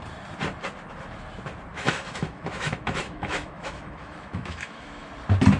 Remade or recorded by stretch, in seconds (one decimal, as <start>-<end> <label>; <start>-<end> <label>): 0.0-1.7 recorded; 1.7-5.1 remade; 5.1-5.6 recorded